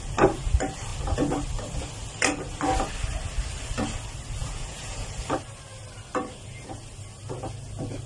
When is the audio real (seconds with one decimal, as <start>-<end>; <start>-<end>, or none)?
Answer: 0.0-4.4; 5.1-8.1